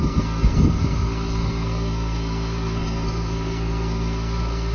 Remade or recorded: remade